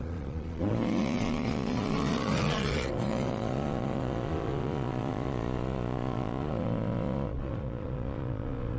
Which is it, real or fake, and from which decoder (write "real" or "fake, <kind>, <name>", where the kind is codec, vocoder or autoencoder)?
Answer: fake, vocoder, Vocos